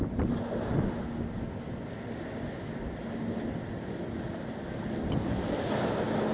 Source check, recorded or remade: recorded